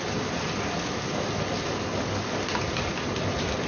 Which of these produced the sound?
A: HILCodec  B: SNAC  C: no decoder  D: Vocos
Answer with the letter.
C